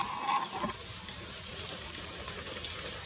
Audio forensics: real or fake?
real